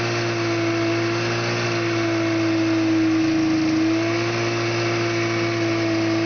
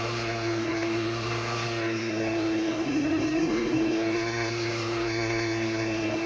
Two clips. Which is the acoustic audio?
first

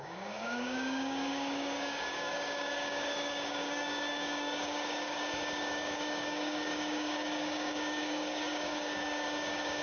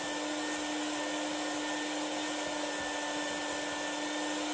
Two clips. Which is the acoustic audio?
second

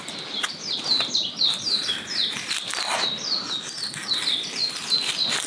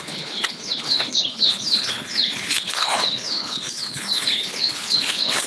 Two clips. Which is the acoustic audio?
first